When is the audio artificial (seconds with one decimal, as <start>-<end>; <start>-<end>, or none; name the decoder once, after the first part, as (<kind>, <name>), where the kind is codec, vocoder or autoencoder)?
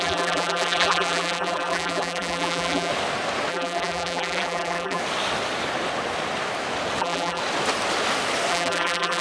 0.0-2.9 (vocoder, BigVGAN v2); 3.5-5.0; 7.0-7.4; 8.5-9.2